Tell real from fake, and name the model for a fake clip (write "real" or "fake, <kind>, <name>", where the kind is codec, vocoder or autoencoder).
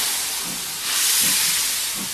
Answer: real